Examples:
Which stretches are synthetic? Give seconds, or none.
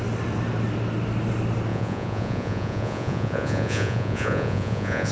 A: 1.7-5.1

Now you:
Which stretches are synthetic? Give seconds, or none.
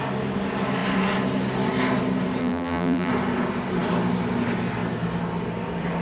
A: 2.4-3.1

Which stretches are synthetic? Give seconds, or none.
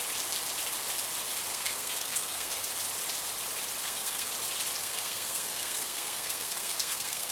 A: 1.5-2.7; 3.8-4.3; 4.8-7.3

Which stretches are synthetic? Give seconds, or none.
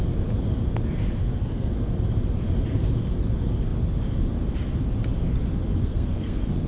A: 1.2-1.7; 5.8-6.7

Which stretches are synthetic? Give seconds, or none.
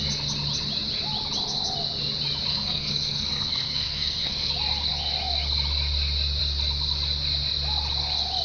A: 2.5-4.5